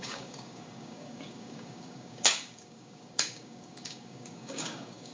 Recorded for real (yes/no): no